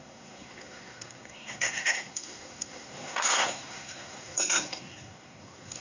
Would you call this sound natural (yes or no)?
no